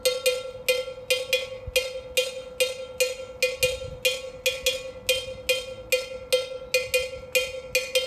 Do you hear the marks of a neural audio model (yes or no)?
no